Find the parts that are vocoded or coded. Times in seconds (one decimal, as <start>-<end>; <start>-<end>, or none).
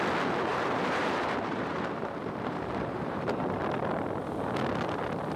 0.5-3.6